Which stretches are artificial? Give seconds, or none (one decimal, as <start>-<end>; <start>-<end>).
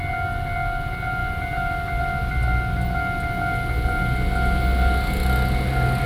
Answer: none